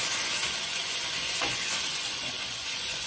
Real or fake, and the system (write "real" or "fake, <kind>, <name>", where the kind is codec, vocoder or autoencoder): fake, vocoder, Vocos